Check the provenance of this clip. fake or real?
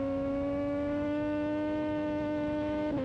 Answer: fake